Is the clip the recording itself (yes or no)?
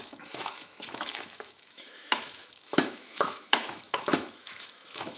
no